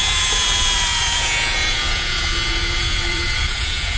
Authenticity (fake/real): fake